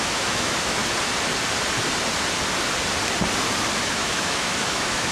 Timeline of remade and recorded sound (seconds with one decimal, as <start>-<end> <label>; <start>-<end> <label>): 0.0-0.8 remade; 0.8-3.9 recorded; 3.9-5.1 remade